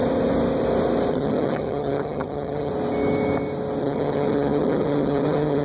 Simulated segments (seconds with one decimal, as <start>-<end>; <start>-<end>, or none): 1.1-2.7; 3.8-5.6